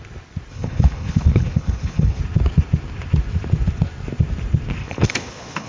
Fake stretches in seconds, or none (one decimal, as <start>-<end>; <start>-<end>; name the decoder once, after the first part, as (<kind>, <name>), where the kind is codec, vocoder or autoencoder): 0.5-2.2 (codec, HILCodec); 4.8-5.7